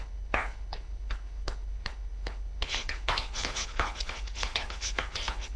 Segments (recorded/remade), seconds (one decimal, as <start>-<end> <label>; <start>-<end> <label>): 0.0-5.6 remade